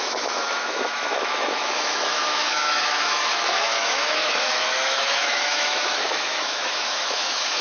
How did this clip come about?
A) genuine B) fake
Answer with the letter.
B